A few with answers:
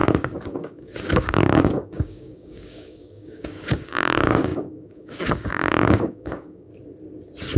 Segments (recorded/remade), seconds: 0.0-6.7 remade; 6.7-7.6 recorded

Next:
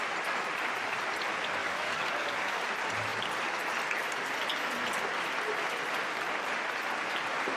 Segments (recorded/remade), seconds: 0.0-1.6 recorded; 1.6-2.6 remade; 2.6-7.6 recorded

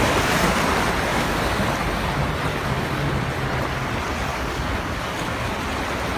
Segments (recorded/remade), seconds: 0.0-1.1 recorded; 1.1-1.6 remade; 1.6-2.5 recorded; 2.5-3.1 remade; 3.1-4.3 recorded; 4.3-5.5 remade; 5.5-6.2 recorded

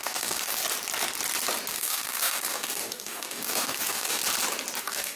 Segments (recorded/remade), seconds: 0.0-0.6 remade; 0.6-1.7 recorded; 1.7-4.2 remade; 4.2-4.8 recorded; 4.8-5.2 remade